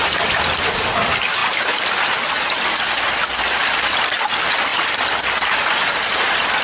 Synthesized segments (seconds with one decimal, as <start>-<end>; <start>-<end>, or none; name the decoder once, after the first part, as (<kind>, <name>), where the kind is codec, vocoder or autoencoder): 1.4-4.1 (vocoder, BigVGAN v2); 4.7-6.6